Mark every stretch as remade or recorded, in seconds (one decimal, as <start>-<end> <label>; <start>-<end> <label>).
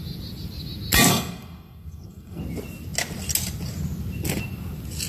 0.0-1.1 recorded; 1.1-2.4 remade; 2.4-5.1 recorded